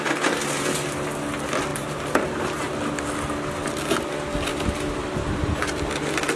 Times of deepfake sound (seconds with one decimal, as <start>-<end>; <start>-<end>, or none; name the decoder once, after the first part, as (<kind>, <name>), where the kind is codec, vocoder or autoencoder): 1.7-2.7 (vocoder, BigVGAN v2); 4.5-5.6